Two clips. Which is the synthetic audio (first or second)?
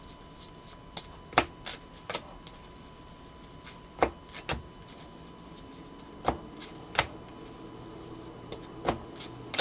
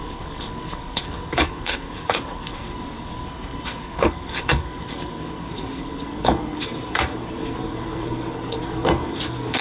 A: second